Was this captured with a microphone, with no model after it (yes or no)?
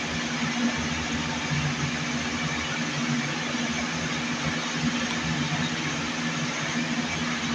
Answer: yes